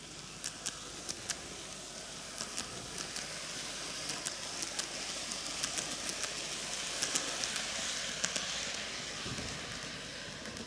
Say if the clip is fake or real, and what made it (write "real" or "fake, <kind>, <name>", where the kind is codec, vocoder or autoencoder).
real